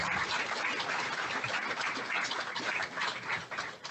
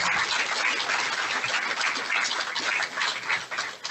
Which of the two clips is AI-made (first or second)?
first